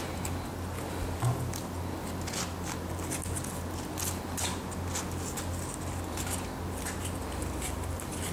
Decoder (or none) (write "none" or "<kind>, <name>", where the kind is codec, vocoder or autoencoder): none